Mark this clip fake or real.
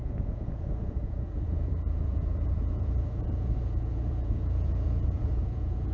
fake